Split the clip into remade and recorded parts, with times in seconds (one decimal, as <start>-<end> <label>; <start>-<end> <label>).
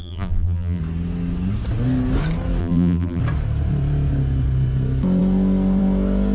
0.0-0.8 remade; 0.8-2.6 recorded; 2.6-3.2 remade; 3.2-6.3 recorded